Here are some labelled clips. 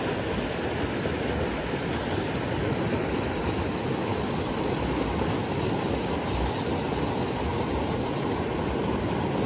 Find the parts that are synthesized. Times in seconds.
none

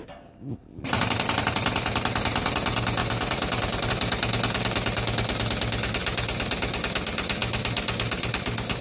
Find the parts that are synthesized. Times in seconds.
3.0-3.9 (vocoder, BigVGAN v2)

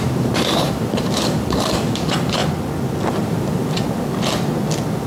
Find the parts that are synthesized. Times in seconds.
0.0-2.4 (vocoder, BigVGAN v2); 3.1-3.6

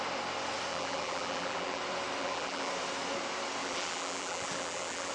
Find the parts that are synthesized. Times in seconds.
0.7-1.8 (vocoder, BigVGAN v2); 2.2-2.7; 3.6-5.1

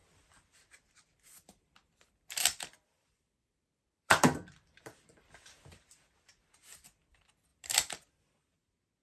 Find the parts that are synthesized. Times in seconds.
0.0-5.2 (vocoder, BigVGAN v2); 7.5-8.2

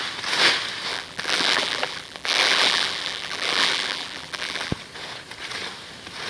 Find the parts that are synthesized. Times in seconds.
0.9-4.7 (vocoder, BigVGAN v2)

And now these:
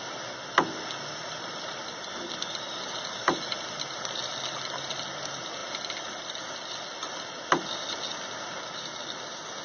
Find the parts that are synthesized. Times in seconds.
none

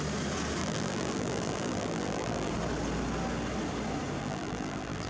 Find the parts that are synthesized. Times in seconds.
0.6-2.5 (vocoder, BigVGAN v2); 4.2-5.1